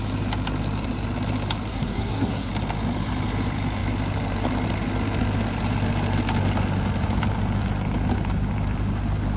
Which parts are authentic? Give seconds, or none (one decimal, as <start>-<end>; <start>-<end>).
0.0-1.7; 2.5-9.4